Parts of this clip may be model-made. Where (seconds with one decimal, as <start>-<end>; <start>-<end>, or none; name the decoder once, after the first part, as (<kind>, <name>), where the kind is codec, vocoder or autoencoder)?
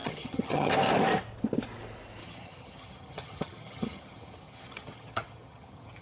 0.0-0.7 (vocoder, HiFi-GAN); 2.2-6.0